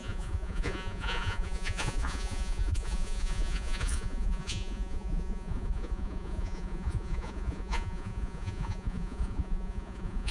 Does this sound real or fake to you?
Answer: fake